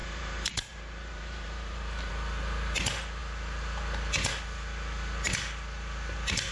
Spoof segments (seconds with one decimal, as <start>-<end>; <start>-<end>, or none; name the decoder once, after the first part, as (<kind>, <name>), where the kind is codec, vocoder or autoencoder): 0.0-2.1 (vocoder, BigVGAN v2)